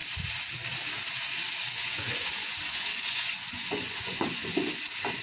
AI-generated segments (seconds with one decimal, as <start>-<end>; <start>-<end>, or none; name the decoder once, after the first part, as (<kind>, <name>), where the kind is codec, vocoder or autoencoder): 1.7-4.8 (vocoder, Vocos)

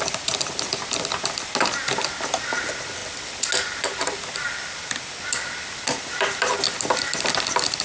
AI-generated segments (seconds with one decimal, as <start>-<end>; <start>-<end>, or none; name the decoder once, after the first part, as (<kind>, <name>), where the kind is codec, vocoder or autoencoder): none

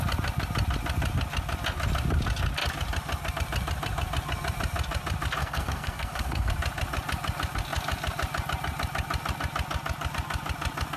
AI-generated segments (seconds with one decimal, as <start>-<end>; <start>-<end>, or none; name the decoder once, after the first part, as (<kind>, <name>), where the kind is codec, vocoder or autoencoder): 5.4-6.5 (codec, SNAC)

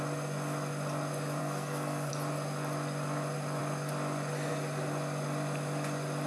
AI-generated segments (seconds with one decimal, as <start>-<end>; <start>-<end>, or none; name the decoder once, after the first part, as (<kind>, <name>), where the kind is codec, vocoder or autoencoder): 1.4-2.1 (codec, SNAC)